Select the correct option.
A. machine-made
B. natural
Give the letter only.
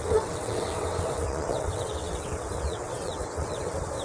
A